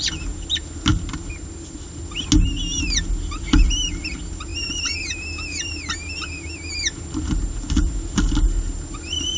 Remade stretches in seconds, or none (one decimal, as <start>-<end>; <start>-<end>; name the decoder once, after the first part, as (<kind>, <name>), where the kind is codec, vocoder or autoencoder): none